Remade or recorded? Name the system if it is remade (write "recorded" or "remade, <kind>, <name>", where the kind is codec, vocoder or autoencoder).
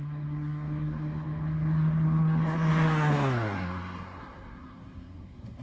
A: remade, codec, SNAC